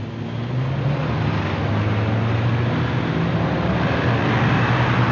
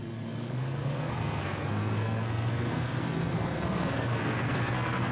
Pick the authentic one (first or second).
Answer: first